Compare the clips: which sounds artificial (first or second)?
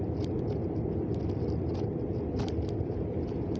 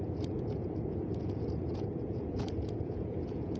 second